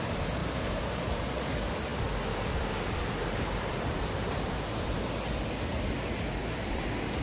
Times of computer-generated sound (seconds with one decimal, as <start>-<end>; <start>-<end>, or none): 0.4-1.2; 3.2-5.1; 6.4-7.2

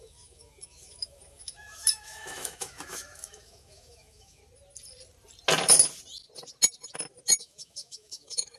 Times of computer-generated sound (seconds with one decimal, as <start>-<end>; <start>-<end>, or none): 0.0-4.4; 7.4-8.6